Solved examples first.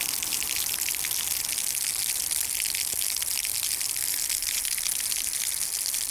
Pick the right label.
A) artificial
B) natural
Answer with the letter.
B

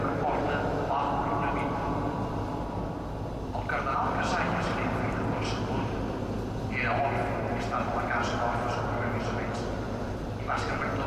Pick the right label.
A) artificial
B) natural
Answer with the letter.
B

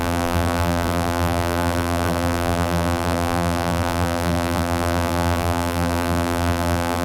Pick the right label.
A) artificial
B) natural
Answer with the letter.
A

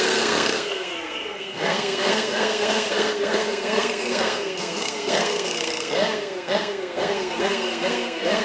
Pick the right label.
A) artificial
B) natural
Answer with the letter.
A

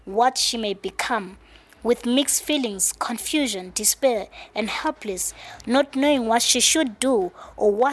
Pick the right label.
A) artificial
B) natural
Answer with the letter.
B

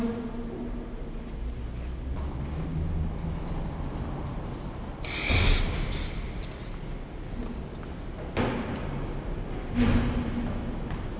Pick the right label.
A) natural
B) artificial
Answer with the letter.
A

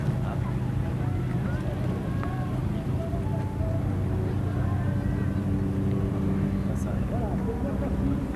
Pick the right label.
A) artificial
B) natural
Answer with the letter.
B